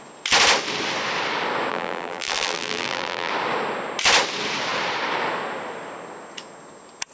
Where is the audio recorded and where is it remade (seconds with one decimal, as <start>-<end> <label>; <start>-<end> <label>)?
0.0-1.7 recorded; 1.7-3.3 remade; 3.3-7.1 recorded